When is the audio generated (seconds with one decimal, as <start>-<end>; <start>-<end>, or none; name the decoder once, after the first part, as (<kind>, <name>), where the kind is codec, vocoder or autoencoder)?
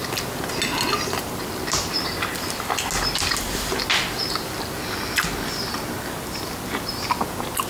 none